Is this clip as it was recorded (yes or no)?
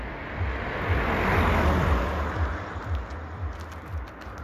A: yes